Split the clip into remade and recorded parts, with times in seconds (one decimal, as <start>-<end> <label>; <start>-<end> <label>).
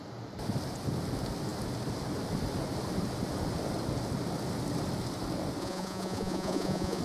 0.0-5.6 recorded; 5.6-7.0 remade